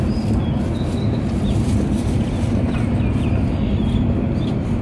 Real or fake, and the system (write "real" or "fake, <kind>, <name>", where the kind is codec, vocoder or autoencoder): real